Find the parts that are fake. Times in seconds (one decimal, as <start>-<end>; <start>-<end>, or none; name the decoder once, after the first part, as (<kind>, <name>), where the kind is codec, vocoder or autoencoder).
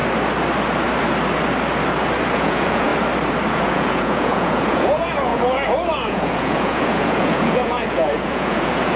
2.3-2.9 (vocoder, Vocos); 3.5-9.0